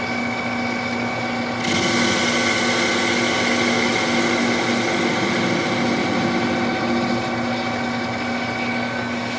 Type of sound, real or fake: real